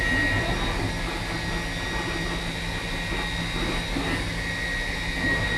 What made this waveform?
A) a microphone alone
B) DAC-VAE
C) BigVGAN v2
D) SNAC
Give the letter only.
A